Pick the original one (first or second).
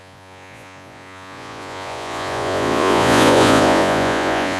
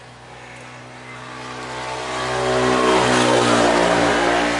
second